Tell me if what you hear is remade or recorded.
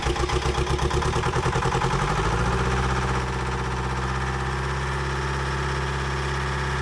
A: recorded